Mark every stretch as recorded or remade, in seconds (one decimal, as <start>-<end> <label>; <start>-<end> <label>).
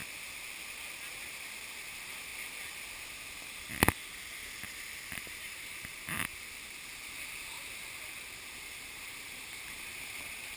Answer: 0.0-1.1 recorded; 1.1-2.3 remade; 2.3-4.6 recorded; 4.6-6.3 remade; 6.3-8.8 recorded; 8.8-10.6 remade